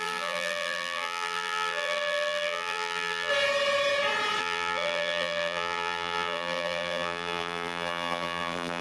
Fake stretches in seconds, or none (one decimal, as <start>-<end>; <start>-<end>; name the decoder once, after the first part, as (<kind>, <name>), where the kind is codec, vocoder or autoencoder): 0.0-3.3 (vocoder, BigVGAN v2); 4.4-8.8

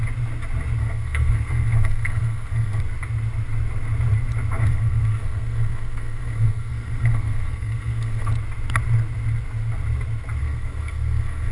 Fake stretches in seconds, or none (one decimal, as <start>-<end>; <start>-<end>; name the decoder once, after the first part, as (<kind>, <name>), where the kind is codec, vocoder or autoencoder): 0.8-2.8 (codec, SNAC); 4.6-8.3; 10.4-11.5

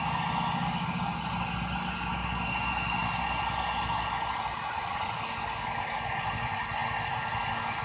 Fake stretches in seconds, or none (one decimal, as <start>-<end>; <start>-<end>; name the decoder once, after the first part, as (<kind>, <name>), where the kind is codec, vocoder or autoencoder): 4.5-5.2 (vocoder, Vocos)

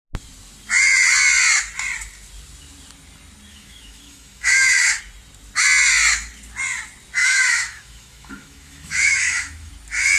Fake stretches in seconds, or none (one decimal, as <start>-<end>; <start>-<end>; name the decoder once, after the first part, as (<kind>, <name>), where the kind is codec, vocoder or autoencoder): 3.5-5.0 (autoencoder, DAC-VAE); 7.2-9.7

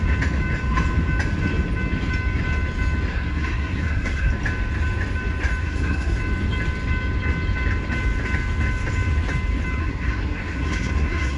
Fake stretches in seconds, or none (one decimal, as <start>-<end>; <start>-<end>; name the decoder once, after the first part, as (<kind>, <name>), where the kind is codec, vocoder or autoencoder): 3.1-4.3 (codec, SNAC); 5.6-6.2; 9.8-11.4

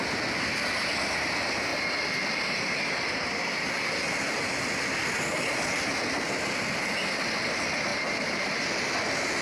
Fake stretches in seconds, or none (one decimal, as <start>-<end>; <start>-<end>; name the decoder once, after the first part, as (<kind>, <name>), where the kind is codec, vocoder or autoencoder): 7.9-8.6 (vocoder, BigVGAN v2)